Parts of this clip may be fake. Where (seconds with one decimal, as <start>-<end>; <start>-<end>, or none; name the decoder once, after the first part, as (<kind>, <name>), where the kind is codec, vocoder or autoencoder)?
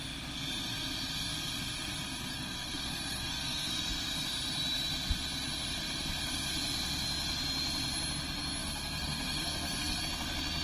2.3-3.7 (codec, SNAC); 8.6-10.0